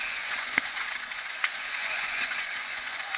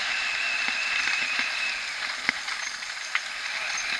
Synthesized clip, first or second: first